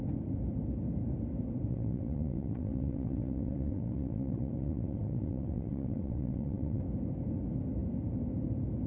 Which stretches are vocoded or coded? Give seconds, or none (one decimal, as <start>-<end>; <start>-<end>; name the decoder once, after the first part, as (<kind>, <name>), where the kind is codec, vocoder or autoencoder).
1.7-6.8 (vocoder, WaveNeXt)